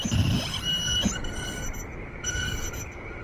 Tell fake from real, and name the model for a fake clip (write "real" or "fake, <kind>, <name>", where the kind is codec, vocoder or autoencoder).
real